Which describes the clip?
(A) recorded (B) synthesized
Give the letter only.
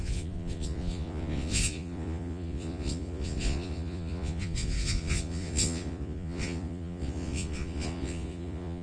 B